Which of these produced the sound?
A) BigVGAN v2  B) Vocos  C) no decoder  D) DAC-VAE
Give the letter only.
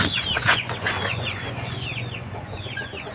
B